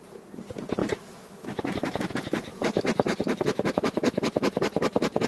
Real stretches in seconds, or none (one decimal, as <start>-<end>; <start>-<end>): 0.0-0.8; 2.1-2.5; 4.6-5.3